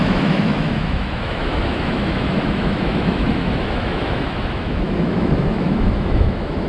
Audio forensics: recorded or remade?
remade